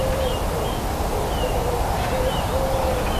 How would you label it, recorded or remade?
recorded